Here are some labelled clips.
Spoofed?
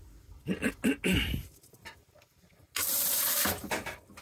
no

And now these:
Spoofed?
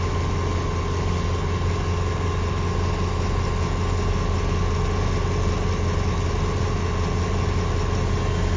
no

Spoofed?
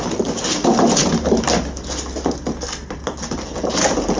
no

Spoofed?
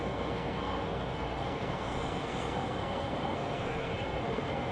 yes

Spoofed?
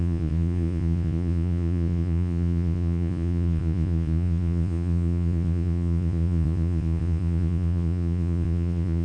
yes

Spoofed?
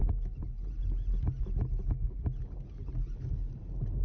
no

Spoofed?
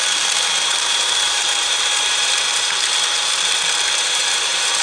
yes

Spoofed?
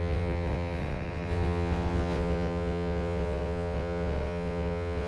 yes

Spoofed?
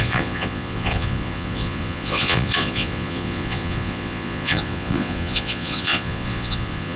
yes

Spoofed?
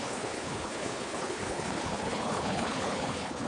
yes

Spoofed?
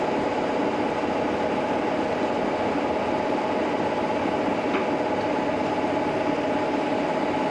no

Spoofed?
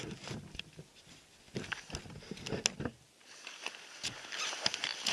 no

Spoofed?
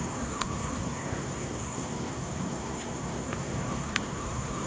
yes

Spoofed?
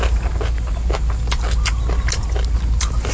no